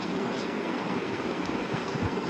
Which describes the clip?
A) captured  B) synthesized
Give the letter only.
B